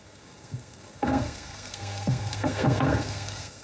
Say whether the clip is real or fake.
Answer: fake